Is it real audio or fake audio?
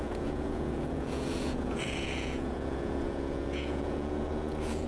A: fake